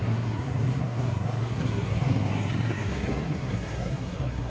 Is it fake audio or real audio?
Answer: fake